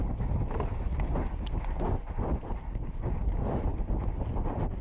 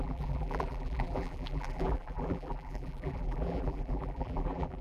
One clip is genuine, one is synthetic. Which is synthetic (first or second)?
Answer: second